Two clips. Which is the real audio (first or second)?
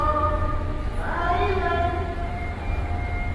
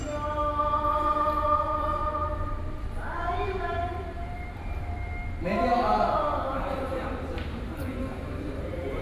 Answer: first